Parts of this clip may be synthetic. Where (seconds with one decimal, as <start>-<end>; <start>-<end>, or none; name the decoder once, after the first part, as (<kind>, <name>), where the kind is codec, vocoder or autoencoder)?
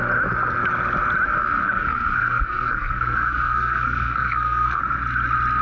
1.4-4.8 (codec, SNAC)